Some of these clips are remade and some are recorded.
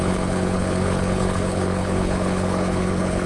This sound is remade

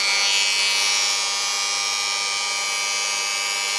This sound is recorded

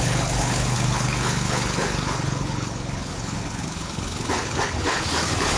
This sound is remade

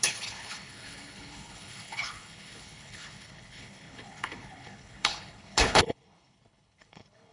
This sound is remade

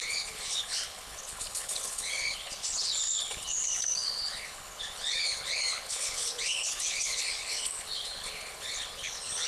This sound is remade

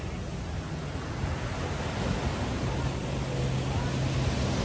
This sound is recorded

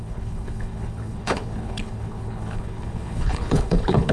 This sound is remade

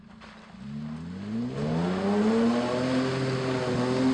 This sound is recorded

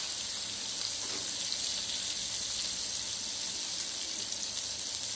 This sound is recorded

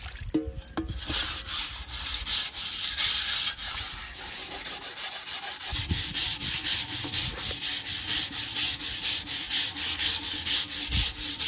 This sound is recorded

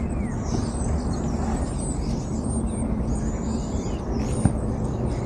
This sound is recorded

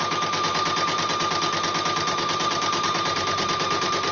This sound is recorded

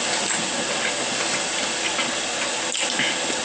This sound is recorded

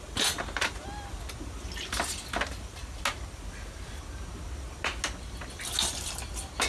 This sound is recorded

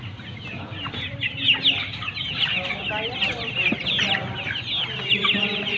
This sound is recorded